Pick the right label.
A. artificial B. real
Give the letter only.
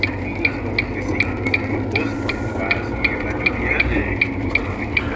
B